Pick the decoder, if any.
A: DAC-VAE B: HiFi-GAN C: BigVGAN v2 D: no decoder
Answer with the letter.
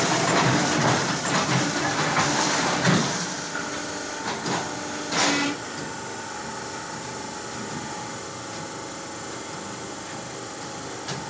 C